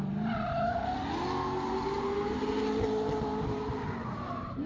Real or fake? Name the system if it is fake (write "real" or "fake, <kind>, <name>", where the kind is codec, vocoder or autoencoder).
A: real